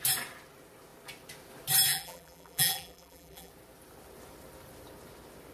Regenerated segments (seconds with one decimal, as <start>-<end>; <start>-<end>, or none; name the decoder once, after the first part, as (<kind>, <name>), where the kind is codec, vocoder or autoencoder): 1.9-3.5 (vocoder, BigVGAN v2)